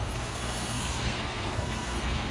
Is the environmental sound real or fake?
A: fake